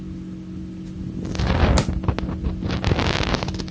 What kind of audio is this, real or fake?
real